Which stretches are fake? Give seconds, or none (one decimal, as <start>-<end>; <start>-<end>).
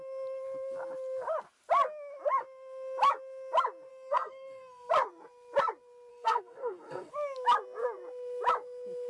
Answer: 3.9-4.9; 6.1-7.1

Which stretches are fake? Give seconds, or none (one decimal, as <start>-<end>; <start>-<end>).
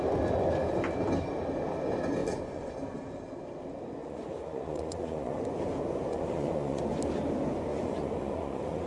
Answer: 2.2-2.7; 4.0-5.4; 6.1-6.8; 7.7-8.9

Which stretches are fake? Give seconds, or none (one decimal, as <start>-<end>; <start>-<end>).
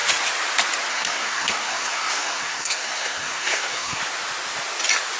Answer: 0.9-4.0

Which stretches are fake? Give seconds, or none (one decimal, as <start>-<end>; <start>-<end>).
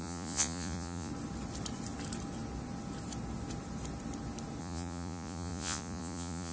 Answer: 0.0-1.1; 4.6-6.5